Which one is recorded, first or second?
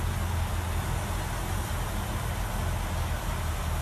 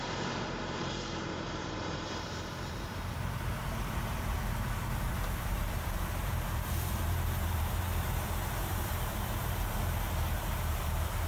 first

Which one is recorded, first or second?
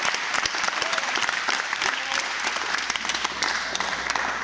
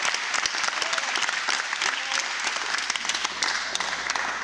second